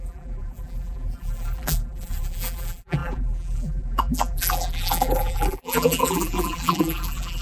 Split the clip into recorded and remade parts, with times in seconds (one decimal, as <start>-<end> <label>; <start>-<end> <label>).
0.0-7.4 remade